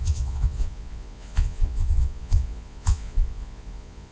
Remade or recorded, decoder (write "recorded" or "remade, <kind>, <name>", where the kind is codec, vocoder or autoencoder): remade, vocoder, Vocos